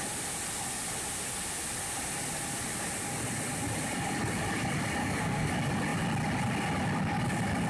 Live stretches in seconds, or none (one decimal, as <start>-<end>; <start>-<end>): 0.0-5.0; 5.5-7.7